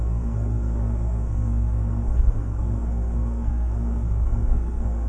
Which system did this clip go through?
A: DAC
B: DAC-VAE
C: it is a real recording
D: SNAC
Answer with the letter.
D